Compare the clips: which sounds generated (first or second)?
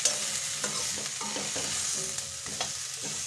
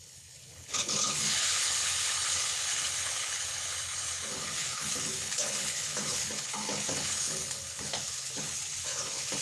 second